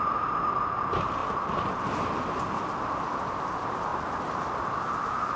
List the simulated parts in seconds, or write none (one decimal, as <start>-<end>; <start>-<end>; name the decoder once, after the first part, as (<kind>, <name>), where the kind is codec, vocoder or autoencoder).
1.2-3.2 (vocoder, BigVGAN v2)